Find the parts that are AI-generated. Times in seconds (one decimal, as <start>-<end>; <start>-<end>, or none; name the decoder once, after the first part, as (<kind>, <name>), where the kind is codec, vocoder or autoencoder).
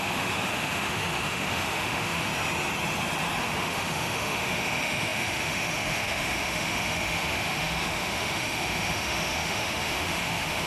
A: 0.0-2.3 (autoencoder, DAC-VAE); 3.4-10.7